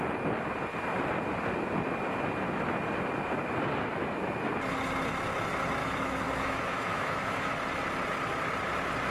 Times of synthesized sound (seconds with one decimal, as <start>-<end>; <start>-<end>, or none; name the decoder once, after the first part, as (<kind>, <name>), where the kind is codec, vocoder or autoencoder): 3.9-4.5 (autoencoder, DAC-VAE); 5.8-7.5